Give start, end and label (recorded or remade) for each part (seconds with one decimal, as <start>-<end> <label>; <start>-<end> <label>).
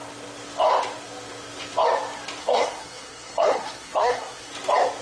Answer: 0.0-2.4 recorded; 2.4-4.5 remade; 4.5-5.0 recorded